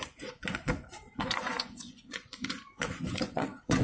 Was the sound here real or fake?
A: fake